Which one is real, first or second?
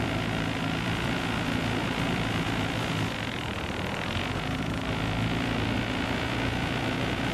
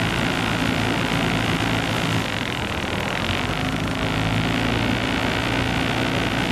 second